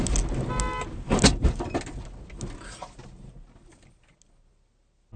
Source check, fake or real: real